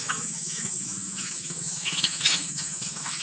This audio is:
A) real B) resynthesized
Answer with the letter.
B